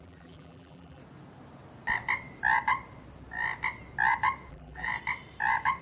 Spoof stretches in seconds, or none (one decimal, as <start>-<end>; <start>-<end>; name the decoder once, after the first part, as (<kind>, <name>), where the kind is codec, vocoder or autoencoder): 0.0-1.0 (vocoder, BigVGAN v2); 4.5-4.9